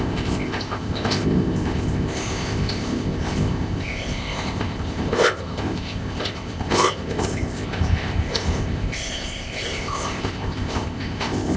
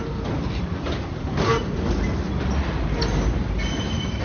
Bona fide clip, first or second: second